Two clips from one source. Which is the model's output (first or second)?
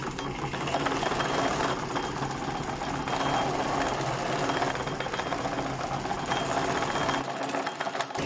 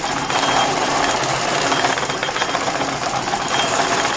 second